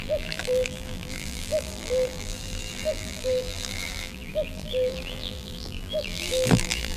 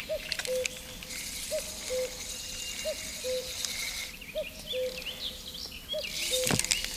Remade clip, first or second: first